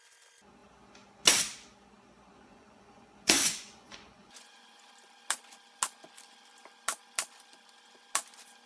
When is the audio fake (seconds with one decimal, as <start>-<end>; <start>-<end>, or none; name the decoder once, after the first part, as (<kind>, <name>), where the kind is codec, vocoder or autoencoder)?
2.3-4.9 (vocoder, Vocos)